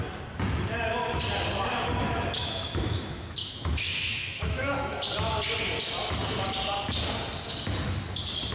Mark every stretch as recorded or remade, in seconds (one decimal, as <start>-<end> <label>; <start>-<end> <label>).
0.0-1.8 recorded; 1.8-4.9 remade; 4.9-8.5 recorded